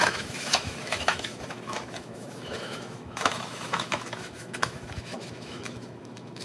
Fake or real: fake